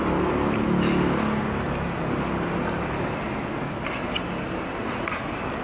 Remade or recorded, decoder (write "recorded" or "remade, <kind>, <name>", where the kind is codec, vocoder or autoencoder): recorded